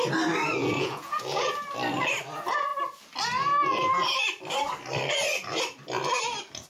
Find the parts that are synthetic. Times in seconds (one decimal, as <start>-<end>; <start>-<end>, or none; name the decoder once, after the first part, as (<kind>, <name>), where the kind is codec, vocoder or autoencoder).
0.6-1.5 (vocoder, Vocos)